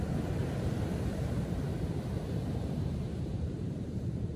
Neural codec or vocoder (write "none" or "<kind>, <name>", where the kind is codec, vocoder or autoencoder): vocoder, BigVGAN v2